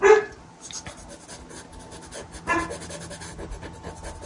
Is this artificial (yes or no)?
no